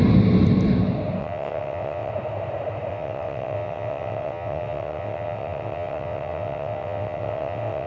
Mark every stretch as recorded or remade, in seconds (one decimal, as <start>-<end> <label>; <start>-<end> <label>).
0.0-1.2 recorded; 1.2-2.1 remade; 2.1-2.9 recorded; 2.9-7.9 remade

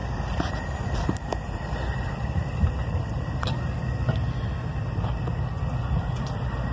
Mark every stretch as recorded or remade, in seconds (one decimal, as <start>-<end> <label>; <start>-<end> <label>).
0.0-3.5 remade; 3.5-6.7 recorded

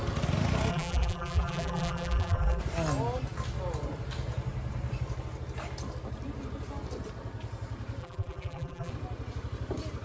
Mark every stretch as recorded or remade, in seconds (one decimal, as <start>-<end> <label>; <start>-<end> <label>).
0.0-0.7 recorded; 0.7-2.6 remade; 2.6-8.0 recorded; 8.0-8.9 remade; 8.9-10.0 recorded

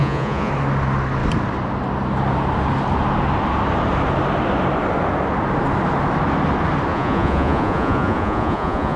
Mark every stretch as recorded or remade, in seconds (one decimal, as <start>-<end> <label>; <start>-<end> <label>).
0.0-0.5 remade; 0.5-6.9 recorded; 6.9-9.0 remade

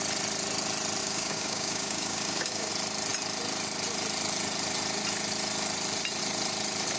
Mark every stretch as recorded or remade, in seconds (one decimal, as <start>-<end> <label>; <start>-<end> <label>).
0.0-1.0 recorded; 1.0-2.7 remade; 2.7-7.0 recorded

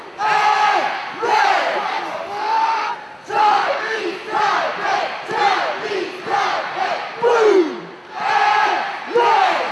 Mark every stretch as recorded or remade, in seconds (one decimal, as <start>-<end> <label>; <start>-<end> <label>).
0.0-1.9 recorded; 1.9-2.9 remade; 2.9-3.4 recorded; 3.4-4.0 remade; 4.0-9.7 recorded